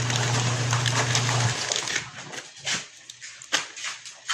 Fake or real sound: real